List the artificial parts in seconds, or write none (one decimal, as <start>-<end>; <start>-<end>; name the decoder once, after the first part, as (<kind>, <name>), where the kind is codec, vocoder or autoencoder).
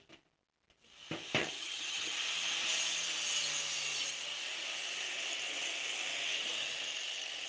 1.4-2.1 (vocoder, HiFi-GAN)